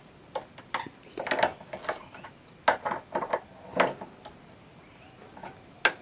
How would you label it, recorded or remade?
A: recorded